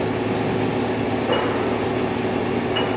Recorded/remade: recorded